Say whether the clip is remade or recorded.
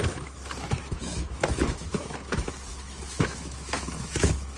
remade